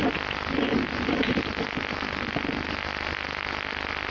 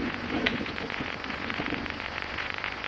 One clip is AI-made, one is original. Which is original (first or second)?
first